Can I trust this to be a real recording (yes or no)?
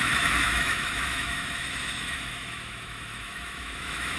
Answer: no